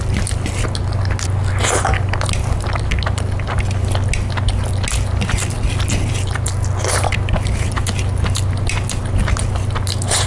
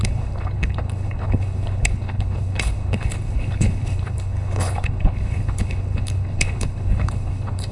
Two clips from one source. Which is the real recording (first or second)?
first